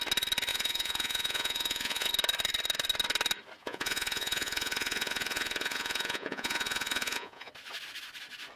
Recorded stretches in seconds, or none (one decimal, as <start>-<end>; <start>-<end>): 0.0-0.5; 2.1-3.6; 7.5-8.6